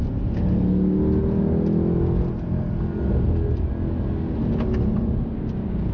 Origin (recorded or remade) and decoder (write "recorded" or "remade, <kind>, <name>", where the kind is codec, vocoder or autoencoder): recorded